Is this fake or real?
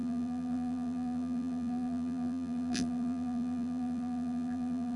fake